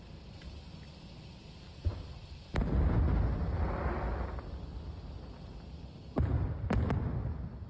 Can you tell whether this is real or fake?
real